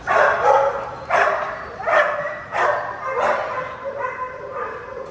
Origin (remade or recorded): recorded